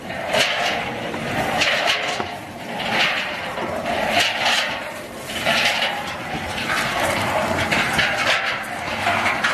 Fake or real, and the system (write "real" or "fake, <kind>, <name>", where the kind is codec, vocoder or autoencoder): fake, vocoder, BigVGAN v2